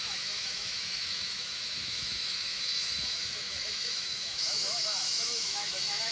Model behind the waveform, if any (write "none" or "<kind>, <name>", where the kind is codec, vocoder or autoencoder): autoencoder, DAC-VAE